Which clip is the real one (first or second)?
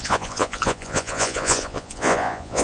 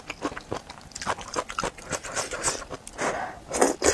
second